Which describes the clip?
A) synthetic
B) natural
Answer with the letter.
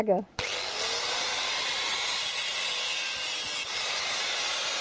B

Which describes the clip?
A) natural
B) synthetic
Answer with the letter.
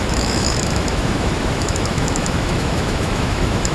B